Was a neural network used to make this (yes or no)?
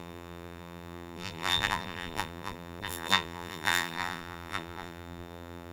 yes